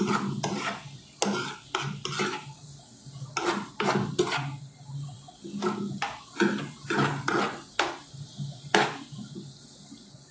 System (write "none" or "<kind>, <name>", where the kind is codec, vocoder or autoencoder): none